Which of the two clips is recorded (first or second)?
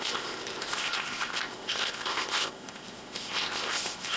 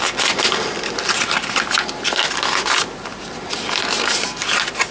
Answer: second